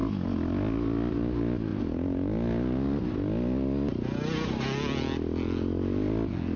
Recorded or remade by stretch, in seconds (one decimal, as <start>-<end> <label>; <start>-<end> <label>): 0.0-6.6 recorded